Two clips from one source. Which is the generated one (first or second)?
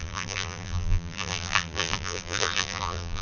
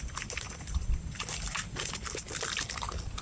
first